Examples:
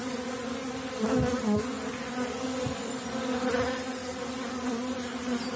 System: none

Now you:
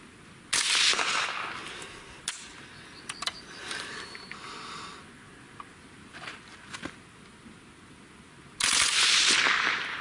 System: none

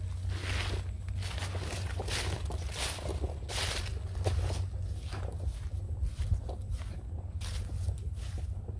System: none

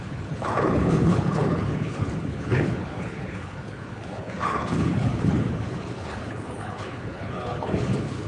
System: codec, HILCodec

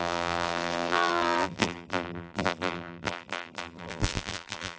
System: vocoder, BigVGAN v2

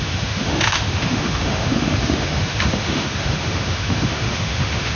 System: autoencoder, DAC-VAE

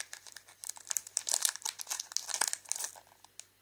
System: none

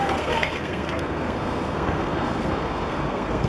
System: codec, SNAC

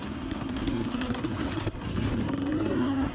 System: codec, SNAC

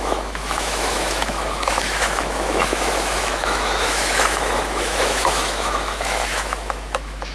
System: autoencoder, DAC-VAE